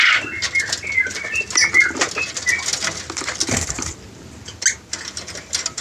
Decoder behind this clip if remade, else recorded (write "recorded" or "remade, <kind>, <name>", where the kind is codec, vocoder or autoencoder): recorded